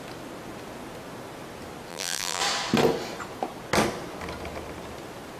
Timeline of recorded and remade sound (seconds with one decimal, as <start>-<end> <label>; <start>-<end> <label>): 0.0-1.9 recorded; 1.9-2.4 remade; 2.4-5.4 recorded